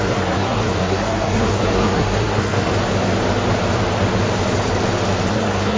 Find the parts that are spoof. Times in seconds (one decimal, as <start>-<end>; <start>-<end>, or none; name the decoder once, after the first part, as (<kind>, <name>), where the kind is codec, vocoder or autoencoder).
0.0-2.7 (codec, SNAC); 5.3-5.8